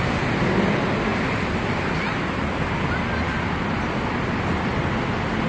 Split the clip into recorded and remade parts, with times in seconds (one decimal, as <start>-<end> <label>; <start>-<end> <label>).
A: 0.0-5.5 recorded